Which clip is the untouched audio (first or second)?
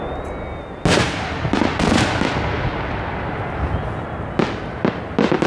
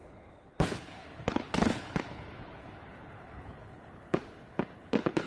first